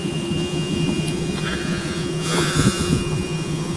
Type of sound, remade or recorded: remade